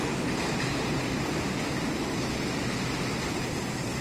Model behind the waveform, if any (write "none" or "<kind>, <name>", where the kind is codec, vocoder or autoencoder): none